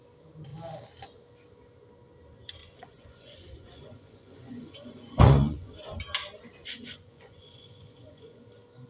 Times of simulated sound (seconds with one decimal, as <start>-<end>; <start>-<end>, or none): 2.6-5.7; 6.6-8.4